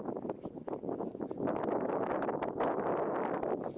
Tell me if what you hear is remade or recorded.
recorded